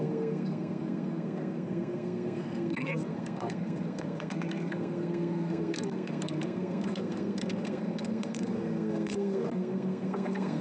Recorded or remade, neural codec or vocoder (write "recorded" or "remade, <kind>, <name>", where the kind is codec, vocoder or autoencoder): remade, codec, SNAC